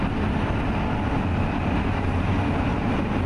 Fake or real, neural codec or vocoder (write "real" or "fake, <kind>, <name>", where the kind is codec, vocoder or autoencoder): real